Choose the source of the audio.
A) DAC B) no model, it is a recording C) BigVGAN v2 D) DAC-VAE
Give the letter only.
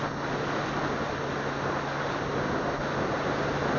B